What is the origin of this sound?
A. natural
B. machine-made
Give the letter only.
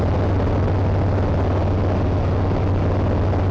A